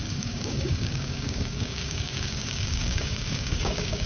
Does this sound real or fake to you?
fake